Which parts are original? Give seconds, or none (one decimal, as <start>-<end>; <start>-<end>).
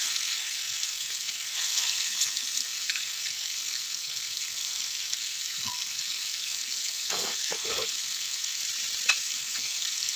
8.6-9.2